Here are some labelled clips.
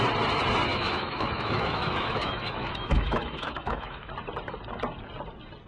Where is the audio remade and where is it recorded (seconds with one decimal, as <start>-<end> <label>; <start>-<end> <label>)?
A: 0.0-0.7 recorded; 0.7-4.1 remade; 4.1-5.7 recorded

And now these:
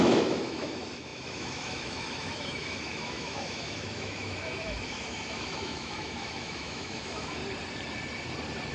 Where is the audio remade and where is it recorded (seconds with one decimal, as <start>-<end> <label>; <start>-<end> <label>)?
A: 0.0-7.4 remade; 7.4-8.7 recorded

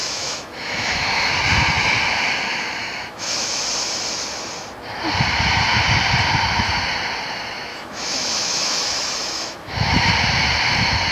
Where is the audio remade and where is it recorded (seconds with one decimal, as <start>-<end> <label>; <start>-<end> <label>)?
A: 0.0-1.3 remade; 1.3-2.5 recorded; 2.5-3.6 remade; 3.6-7.7 recorded; 7.7-10.1 remade; 10.1-11.1 recorded

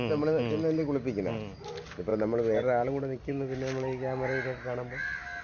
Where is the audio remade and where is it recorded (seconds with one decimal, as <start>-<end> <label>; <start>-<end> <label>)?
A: 0.0-5.4 recorded